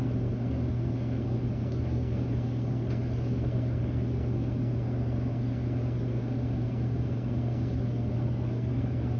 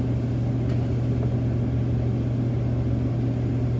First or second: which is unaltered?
second